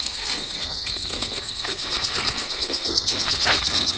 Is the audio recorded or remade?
remade